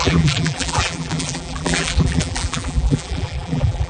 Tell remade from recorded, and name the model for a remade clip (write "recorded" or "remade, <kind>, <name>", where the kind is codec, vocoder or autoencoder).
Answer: remade, vocoder, BigVGAN v2